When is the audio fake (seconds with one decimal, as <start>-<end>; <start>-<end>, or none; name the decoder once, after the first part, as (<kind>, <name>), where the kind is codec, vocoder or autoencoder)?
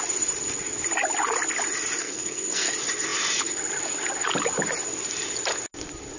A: 2.0-2.7 (codec, SNAC)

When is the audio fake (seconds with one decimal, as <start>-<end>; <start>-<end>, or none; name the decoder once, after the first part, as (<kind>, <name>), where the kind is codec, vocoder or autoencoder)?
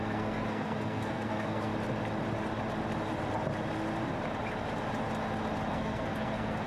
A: 0.0-1.7 (codec, SNAC); 5.7-6.7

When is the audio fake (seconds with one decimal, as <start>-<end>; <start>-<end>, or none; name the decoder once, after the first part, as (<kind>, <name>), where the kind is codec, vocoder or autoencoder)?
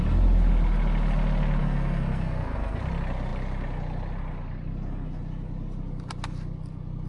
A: 1.6-2.8 (codec, SNAC)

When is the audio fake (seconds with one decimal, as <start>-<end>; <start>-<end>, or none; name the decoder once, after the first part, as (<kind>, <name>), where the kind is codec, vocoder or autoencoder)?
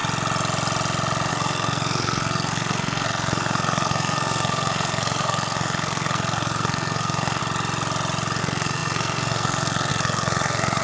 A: 1.3-7.4 (codec, SNAC); 8.4-10.8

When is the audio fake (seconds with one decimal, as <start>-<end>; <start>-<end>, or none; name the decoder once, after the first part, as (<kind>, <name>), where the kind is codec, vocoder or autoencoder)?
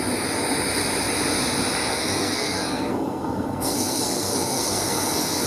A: 1.9-5.5 (codec, SNAC)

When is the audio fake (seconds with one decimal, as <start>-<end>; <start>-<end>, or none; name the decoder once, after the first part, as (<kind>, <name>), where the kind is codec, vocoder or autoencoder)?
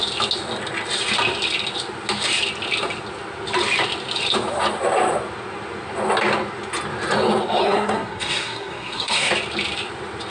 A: 7.6-9.3 (codec, SNAC)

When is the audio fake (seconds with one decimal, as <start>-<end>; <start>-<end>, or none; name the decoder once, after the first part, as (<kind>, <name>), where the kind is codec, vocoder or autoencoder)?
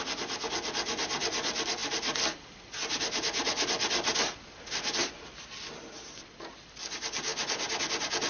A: none